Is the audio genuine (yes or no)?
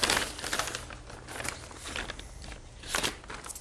yes